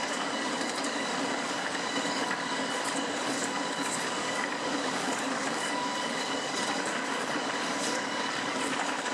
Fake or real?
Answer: fake